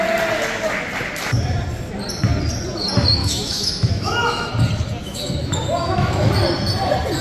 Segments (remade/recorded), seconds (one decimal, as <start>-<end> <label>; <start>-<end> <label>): 0.0-3.2 recorded; 3.2-4.5 remade; 4.5-5.0 recorded; 5.0-6.3 remade; 6.3-7.2 recorded